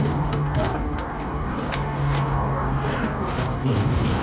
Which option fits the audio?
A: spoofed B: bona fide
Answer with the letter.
A